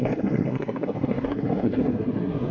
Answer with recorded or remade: remade